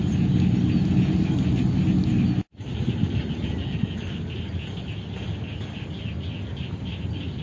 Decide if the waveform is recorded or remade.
recorded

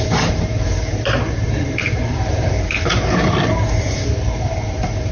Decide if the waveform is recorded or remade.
remade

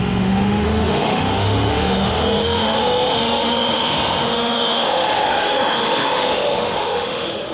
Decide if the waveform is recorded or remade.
remade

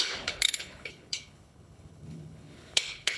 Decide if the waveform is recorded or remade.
remade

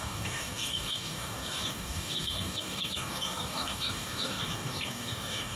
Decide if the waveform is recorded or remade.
remade